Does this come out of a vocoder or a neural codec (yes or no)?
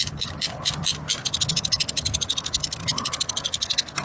yes